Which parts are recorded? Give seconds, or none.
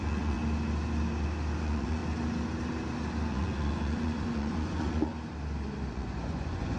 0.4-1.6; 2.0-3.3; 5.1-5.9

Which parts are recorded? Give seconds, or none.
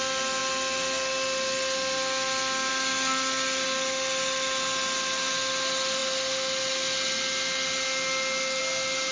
0.0-9.1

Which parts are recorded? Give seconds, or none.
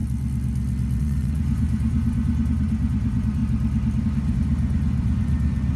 0.0-1.0; 3.4-4.0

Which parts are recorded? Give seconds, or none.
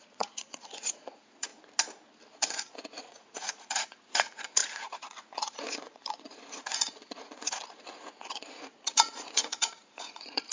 1.5-2.3